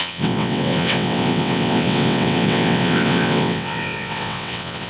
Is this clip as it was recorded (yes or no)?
no